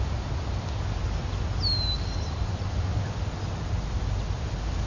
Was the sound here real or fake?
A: real